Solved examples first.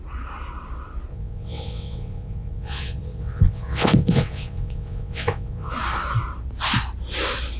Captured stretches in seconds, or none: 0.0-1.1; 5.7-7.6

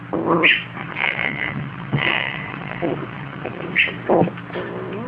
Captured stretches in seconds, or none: 0.0-0.8; 3.8-5.1

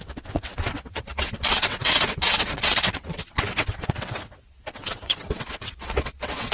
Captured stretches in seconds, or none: none

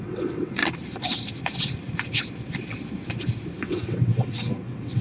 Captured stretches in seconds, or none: 0.6-3.6